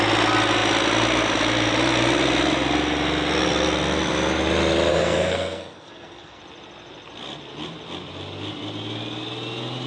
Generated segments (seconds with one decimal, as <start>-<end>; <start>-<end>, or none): 4.9-6.4